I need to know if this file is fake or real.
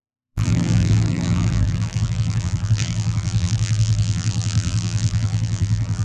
fake